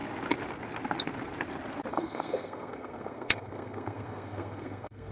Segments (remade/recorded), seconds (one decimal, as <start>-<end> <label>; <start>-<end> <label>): 0.0-1.9 recorded; 1.9-5.1 remade